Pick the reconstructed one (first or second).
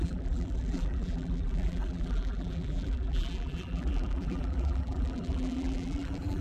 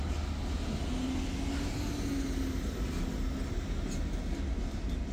first